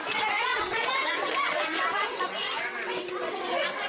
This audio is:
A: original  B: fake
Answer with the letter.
B